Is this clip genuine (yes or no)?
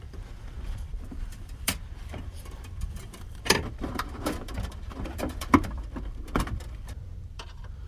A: no